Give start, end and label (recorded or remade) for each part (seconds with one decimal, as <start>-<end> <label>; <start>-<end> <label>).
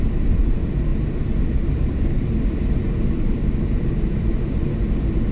0.0-5.3 recorded